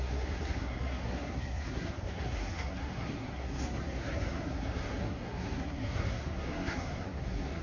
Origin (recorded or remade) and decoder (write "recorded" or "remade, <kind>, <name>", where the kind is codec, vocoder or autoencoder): remade, codec, SNAC